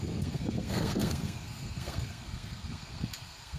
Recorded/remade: remade